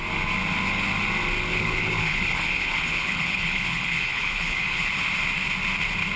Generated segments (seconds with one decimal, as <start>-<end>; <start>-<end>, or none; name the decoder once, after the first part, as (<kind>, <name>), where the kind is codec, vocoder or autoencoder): 1.5-4.9 (codec, HILCodec)